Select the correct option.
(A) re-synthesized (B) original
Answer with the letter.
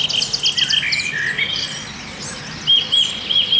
B